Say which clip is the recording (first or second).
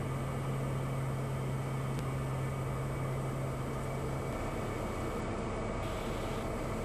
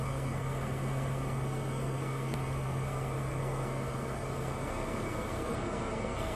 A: first